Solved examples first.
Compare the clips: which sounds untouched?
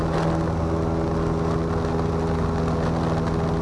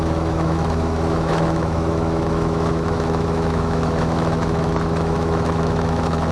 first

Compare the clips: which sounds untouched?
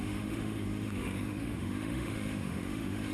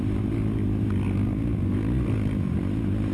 second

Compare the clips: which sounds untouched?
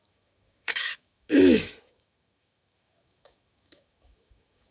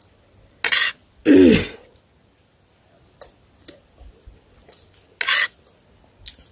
second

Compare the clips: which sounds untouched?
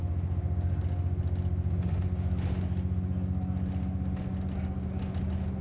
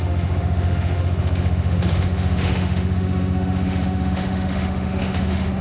first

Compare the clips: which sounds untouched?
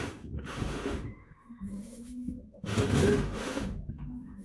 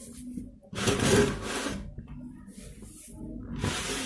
second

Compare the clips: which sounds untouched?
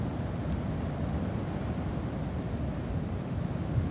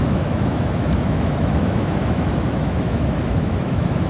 first